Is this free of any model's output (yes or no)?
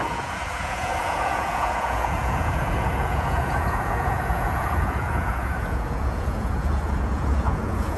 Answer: no